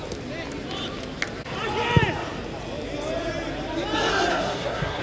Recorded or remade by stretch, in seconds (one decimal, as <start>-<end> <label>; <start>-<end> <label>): 0.0-4.3 recorded; 4.3-5.0 remade